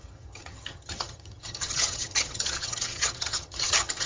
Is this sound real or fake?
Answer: fake